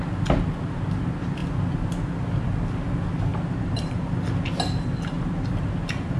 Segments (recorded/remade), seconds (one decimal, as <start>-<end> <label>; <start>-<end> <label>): 0.0-3.3 recorded; 3.3-4.0 remade; 4.0-6.2 recorded